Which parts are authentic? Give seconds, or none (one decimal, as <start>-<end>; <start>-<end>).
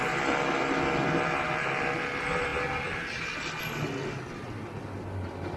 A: 0.0-5.6